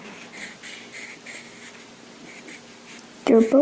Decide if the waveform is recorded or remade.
recorded